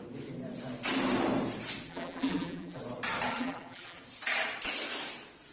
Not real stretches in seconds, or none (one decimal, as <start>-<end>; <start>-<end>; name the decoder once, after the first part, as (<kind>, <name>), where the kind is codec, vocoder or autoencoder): 1.9-2.8 (vocoder, BigVGAN v2); 3.3-4.0